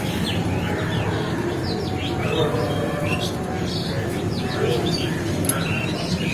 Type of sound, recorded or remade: recorded